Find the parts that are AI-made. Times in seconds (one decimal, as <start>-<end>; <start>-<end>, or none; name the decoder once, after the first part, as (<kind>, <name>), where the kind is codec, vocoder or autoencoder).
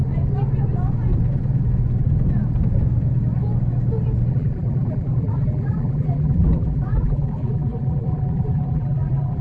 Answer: 4.3-9.4 (vocoder, BigVGAN v2)